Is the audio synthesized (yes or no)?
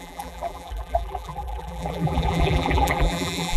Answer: yes